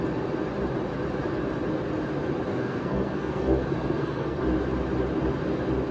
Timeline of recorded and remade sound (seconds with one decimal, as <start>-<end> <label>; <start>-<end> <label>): 0.0-2.5 recorded; 2.5-4.4 remade; 4.4-5.9 recorded

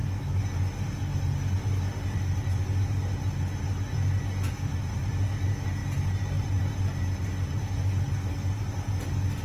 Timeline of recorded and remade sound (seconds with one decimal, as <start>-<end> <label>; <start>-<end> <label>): 0.0-5.8 recorded; 5.8-6.6 remade; 6.6-9.4 recorded

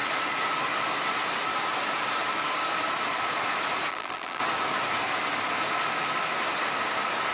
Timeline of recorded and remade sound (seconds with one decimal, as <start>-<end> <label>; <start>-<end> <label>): 0.0-3.9 recorded; 3.9-4.4 remade; 4.4-7.3 recorded

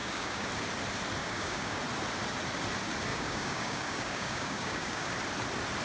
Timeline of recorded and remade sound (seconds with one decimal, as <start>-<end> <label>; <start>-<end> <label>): 0.0-0.5 remade; 0.5-1.2 recorded; 1.2-1.8 remade; 1.8-3.1 recorded; 3.1-5.1 remade; 5.1-5.8 recorded

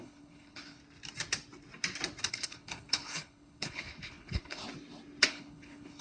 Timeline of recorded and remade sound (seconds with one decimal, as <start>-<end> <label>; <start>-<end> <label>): 0.0-0.8 remade; 0.8-2.3 recorded; 2.3-4.6 remade; 4.6-5.3 recorded; 5.3-6.0 remade